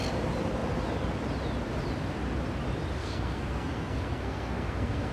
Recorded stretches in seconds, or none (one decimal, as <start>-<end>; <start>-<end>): 0.0-3.0